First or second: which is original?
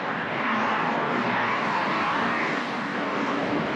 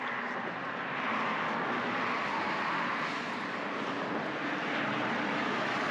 second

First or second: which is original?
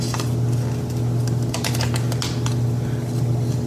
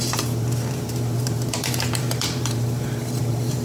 first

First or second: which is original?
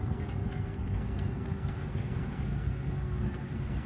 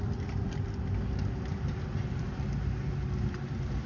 second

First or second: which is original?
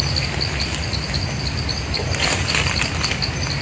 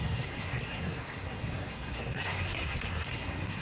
first